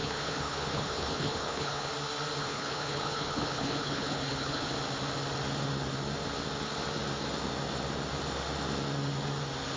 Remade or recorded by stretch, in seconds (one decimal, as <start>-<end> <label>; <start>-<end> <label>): 0.0-1.9 remade; 1.9-2.4 recorded; 2.4-4.7 remade; 4.7-9.8 recorded